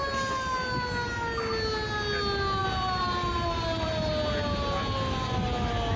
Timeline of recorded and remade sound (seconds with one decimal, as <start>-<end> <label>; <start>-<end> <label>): 0.0-2.6 recorded; 2.6-4.1 remade; 4.1-6.0 recorded